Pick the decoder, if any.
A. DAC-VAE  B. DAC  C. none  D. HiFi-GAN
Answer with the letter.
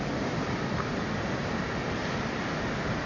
C